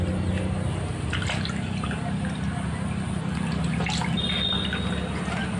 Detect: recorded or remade recorded